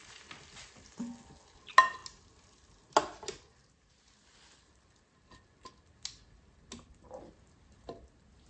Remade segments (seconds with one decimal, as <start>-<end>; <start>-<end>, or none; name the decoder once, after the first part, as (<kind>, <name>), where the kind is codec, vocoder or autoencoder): none